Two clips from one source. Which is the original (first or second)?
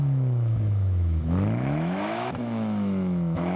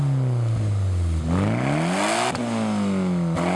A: second